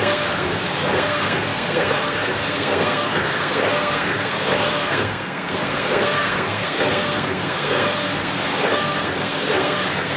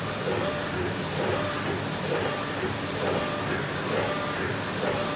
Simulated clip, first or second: first